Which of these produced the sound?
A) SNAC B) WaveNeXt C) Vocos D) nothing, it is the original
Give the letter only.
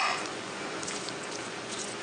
C